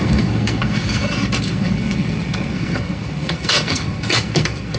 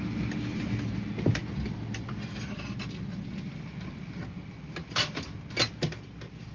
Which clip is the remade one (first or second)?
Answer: first